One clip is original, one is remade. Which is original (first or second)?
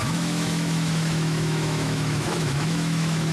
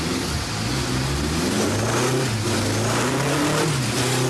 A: second